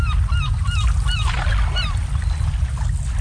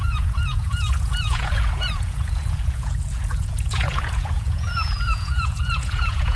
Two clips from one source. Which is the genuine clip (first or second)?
first